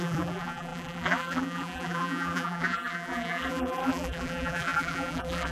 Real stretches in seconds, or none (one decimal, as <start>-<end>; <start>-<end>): none